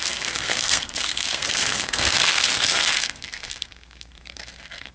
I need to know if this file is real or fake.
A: fake